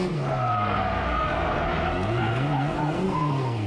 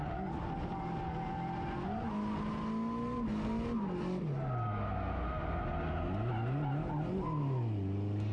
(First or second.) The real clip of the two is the second